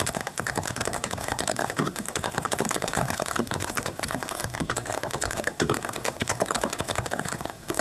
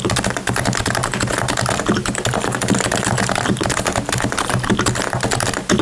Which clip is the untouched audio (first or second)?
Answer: second